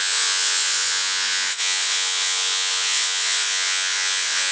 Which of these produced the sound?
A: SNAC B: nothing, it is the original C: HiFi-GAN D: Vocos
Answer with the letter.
D